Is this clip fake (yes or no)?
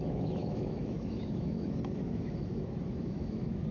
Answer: yes